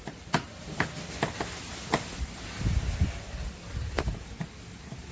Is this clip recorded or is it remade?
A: recorded